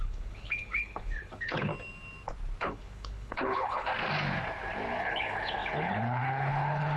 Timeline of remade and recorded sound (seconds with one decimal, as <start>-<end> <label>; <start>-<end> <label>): 0.0-1.7 remade; 1.7-2.6 recorded; 2.6-3.9 remade; 3.9-5.0 recorded; 5.0-7.0 remade